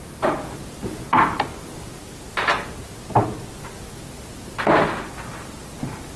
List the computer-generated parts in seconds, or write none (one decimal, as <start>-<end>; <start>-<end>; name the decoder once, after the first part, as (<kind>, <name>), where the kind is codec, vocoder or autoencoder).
none